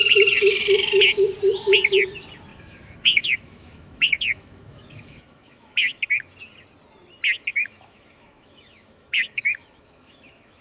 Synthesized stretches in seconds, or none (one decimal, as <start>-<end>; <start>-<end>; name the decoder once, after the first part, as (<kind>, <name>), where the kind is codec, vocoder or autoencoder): 2.5-6.0 (autoencoder, DAC-VAE); 7.5-10.6